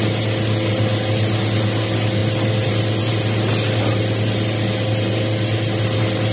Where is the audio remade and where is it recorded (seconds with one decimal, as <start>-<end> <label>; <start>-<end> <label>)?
0.0-6.3 recorded